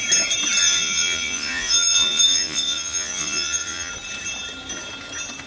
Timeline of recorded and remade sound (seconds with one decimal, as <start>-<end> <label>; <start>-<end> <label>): 0.0-0.6 recorded; 0.6-3.9 remade; 3.9-5.5 recorded